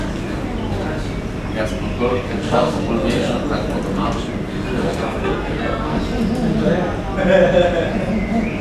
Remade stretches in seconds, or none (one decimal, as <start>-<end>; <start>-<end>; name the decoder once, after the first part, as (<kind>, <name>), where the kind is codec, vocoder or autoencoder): 2.1-2.9 (codec, SNAC); 4.8-6.0